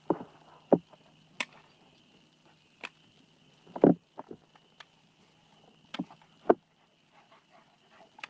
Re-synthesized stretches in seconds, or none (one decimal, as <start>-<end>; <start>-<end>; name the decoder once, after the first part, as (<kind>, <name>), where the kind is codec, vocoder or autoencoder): none